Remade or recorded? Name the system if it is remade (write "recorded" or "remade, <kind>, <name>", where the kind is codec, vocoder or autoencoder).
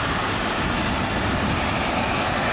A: recorded